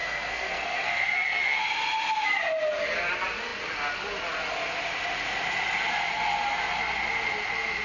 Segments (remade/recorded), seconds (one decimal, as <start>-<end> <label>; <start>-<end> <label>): 0.0-1.6 remade; 1.6-7.8 recorded